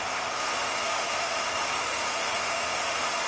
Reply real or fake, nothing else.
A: fake